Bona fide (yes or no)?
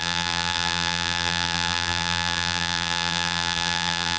no